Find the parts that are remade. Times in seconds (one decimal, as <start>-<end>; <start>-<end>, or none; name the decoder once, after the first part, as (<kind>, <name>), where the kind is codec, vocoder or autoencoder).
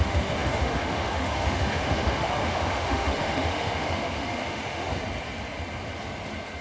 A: 0.0-4.9 (autoencoder, DAC-VAE)